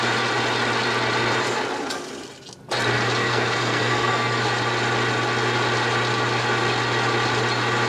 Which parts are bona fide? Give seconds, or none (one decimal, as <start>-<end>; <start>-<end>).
0.0-3.2; 4.4-7.9